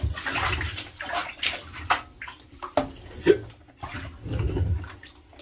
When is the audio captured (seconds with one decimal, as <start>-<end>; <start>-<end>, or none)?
0.0-5.4